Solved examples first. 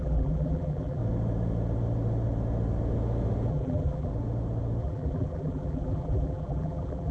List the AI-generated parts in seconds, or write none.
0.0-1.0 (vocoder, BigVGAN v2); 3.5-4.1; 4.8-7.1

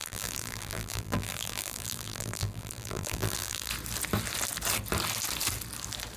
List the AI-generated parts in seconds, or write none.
0.0-3.7 (vocoder, BigVGAN v2)

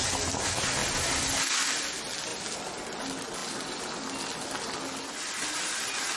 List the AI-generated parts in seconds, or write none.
2.3-3.0 (vocoder, BigVGAN v2)

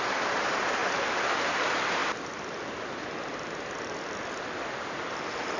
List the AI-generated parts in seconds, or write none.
0.0-0.8 (vocoder, BigVGAN v2); 1.3-2.0; 4.9-5.6

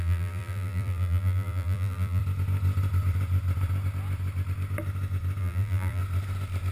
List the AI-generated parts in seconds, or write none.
0.0-2.2 (vocoder, BigVGAN v2); 5.4-6.0

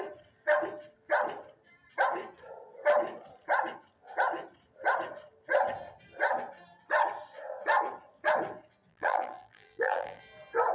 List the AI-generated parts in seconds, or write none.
8.9-10.2 (vocoder, BigVGAN v2)

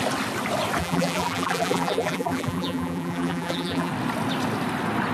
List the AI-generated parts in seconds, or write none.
0.8-3.9 (vocoder, BigVGAN v2)